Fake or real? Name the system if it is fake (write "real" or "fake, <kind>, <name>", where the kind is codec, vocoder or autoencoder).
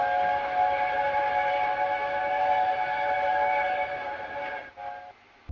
real